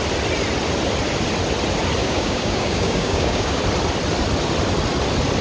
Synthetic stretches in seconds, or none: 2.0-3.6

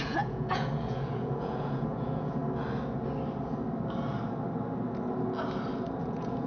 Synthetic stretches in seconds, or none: 0.0-2.4; 6.0-6.5

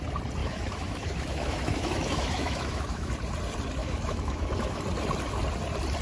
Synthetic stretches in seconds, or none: 0.4-3.1; 3.8-4.8

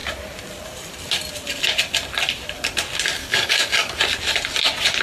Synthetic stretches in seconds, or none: 3.2-4.0